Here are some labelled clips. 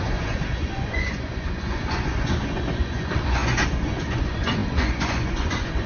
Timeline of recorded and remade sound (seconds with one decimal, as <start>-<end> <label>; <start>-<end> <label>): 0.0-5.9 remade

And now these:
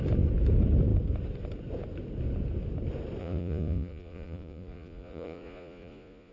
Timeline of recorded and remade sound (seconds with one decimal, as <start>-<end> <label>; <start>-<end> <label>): 0.0-3.2 recorded; 3.2-6.3 remade

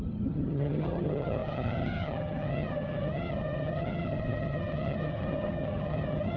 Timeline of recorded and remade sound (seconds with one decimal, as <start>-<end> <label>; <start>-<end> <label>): 0.0-6.4 remade

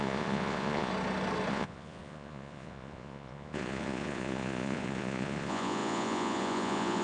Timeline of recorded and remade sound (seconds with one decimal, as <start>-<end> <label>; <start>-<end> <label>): 0.0-0.9 remade; 0.9-1.5 recorded; 1.5-7.0 remade

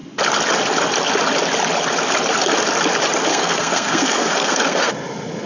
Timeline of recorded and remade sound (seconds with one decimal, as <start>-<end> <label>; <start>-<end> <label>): 0.0-3.3 recorded; 3.3-4.9 remade; 4.9-5.5 recorded

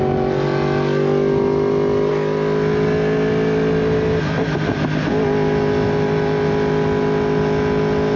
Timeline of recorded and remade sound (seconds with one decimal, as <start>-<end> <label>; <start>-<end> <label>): 0.0-8.2 recorded

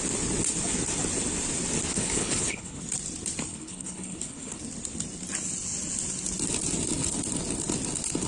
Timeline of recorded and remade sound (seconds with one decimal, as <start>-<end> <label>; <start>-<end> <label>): 0.0-1.9 recorded; 1.9-2.8 remade; 2.8-3.5 recorded; 3.5-4.6 remade; 4.6-8.3 recorded